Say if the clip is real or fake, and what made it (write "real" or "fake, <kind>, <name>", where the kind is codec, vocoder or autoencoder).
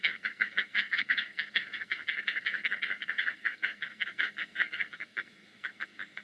fake, codec, SNAC